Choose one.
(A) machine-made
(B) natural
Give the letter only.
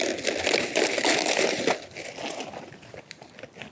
B